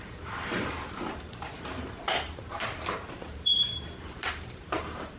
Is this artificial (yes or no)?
yes